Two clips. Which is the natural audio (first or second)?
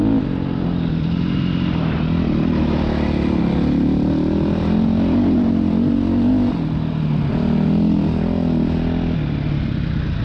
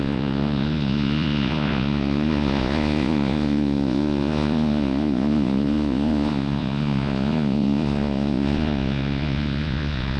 first